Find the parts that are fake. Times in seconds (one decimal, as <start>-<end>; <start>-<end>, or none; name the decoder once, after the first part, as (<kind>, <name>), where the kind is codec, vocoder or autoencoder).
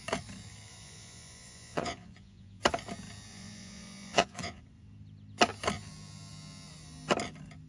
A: 0.7-2.6 (vocoder, Vocos); 3.3-4.6